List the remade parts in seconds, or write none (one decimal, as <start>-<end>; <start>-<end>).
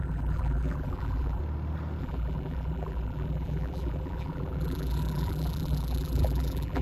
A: 0.0-1.4; 2.0-6.8